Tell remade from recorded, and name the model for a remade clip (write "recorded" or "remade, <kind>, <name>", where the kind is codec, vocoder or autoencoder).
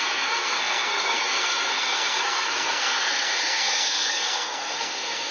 remade, codec, SNAC